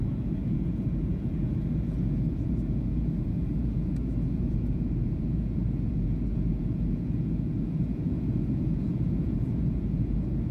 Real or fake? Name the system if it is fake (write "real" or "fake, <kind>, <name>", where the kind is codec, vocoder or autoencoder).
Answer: fake, vocoder, Vocos